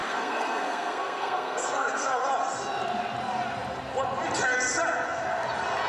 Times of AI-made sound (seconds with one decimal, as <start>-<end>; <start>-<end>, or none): 0.0-2.3